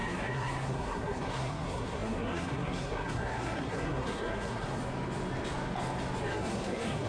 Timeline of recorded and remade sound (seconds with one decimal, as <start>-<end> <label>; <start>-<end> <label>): 0.0-4.8 remade; 4.8-6.3 recorded; 6.3-7.1 remade